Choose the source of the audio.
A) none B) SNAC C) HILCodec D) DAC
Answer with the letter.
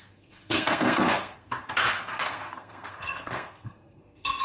B